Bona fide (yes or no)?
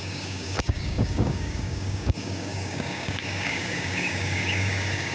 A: no